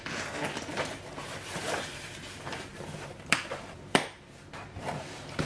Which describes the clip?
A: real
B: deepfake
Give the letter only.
B